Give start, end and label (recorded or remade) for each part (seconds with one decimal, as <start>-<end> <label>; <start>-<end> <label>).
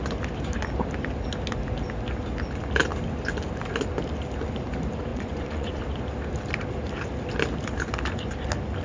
0.0-5.1 recorded; 5.1-5.8 remade; 5.8-8.8 recorded